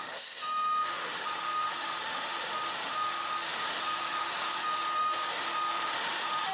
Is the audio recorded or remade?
remade